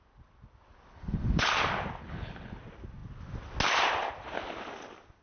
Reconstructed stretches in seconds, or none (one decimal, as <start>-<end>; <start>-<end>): 0.9-1.5; 2.0-2.6